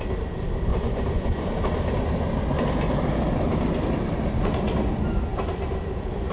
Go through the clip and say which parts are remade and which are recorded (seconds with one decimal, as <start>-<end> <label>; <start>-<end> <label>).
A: 0.0-0.7 recorded; 0.7-1.5 remade; 1.5-6.3 recorded